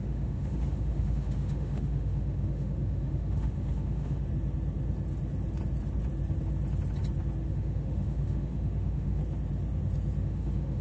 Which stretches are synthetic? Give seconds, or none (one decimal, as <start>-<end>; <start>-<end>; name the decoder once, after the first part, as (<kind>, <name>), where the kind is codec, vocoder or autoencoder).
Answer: 0.0-4.3 (autoencoder, DAC-VAE); 7.5-9.2; 10.2-10.8